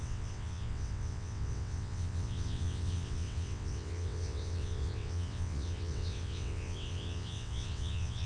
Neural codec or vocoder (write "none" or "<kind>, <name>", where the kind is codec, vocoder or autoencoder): vocoder, WaveNeXt